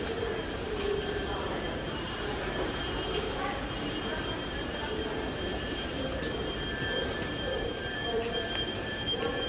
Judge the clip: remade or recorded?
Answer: remade